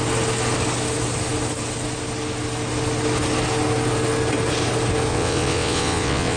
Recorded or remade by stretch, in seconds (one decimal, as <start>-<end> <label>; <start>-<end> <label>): 0.0-5.1 recorded; 5.1-6.4 remade